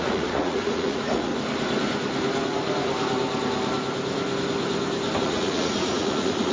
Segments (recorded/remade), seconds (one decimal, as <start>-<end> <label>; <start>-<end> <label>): 0.0-1.3 remade; 1.3-5.2 recorded; 5.2-6.5 remade